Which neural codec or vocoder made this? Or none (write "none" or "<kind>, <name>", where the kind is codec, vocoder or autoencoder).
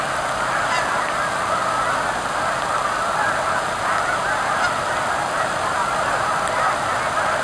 none